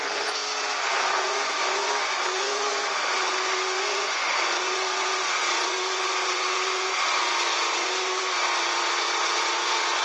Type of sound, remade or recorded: remade